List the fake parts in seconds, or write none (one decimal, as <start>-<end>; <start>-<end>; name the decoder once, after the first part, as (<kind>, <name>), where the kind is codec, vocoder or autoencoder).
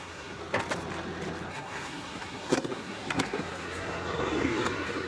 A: 0.0-0.4 (codec, SNAC); 1.5-5.1